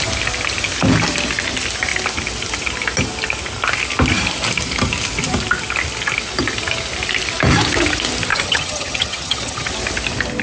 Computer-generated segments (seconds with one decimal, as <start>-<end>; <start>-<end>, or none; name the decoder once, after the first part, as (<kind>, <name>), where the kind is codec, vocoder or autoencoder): 8.3-9.7 (vocoder, HiFi-GAN)